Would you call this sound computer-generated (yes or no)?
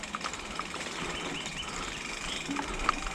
no